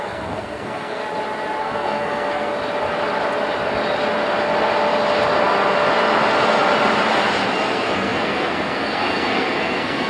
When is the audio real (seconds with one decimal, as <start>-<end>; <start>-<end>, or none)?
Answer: 1.0-1.6; 2.5-7.7